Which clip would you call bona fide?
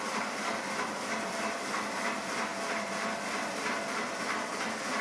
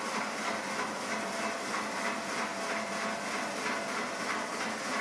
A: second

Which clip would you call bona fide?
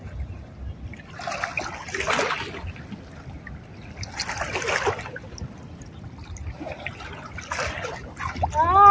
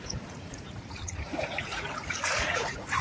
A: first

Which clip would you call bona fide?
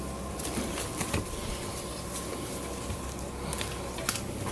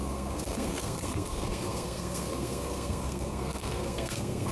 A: first